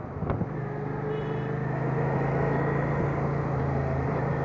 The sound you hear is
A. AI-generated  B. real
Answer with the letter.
B